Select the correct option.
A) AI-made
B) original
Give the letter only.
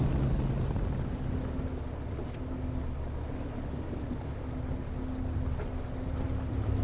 B